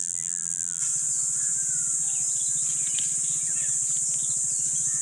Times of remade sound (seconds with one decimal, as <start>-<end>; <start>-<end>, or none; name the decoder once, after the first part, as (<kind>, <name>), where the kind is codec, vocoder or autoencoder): 0.0-0.8 (vocoder, BigVGAN v2)